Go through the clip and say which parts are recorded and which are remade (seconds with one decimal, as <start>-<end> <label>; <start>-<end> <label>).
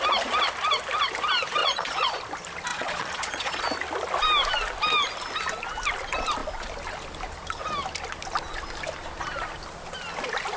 0.0-1.6 recorded; 1.6-2.2 remade; 2.2-2.7 recorded; 2.7-3.6 remade; 3.6-10.6 recorded